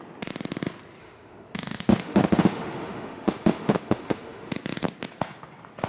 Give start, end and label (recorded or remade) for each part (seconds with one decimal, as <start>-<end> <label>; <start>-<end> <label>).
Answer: 0.0-1.0 recorded; 1.0-4.5 remade; 4.5-5.9 recorded